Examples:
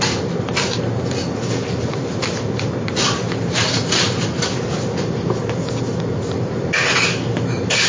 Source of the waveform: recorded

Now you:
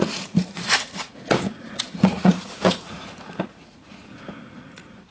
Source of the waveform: remade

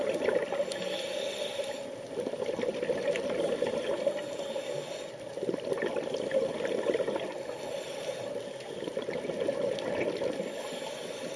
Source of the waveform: recorded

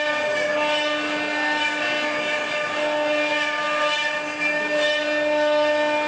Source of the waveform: recorded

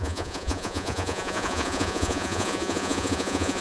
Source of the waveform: remade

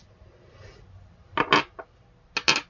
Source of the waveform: recorded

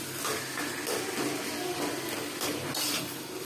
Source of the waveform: recorded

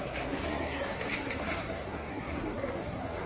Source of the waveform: remade